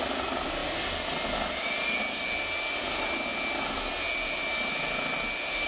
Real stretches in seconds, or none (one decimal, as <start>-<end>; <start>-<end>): 0.0-5.7